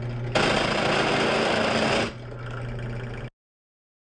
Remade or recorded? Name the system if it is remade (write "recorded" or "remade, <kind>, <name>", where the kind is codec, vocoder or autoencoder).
recorded